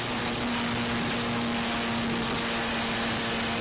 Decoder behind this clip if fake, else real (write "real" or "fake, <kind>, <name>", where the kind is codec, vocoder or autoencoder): real